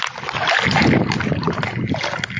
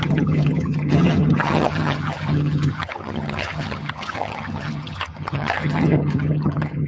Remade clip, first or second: second